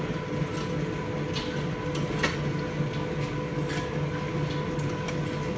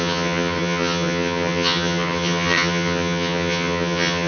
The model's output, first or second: second